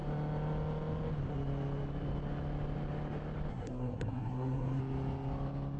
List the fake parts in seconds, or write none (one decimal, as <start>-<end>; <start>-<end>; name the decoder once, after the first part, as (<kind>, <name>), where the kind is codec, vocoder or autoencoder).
3.5-4.8 (codec, SNAC)